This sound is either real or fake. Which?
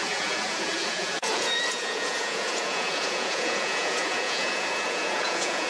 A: fake